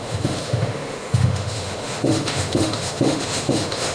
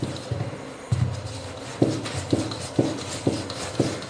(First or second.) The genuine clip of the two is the second